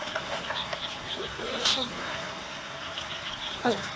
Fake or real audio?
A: fake